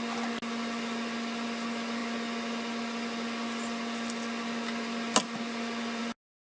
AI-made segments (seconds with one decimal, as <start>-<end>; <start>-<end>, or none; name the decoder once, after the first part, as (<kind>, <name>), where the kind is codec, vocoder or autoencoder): none